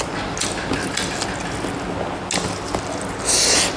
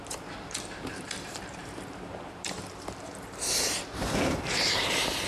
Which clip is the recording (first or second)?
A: first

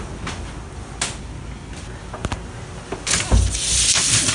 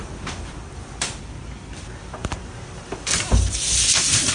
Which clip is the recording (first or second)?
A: first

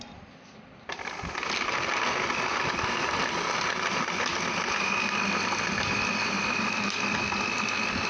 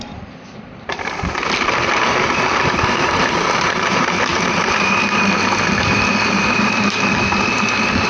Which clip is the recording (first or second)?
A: first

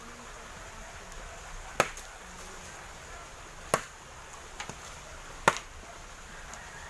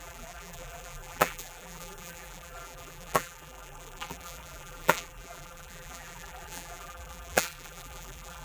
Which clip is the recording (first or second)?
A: first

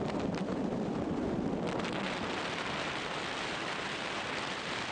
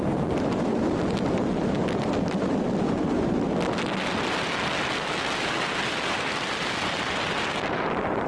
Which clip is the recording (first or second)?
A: second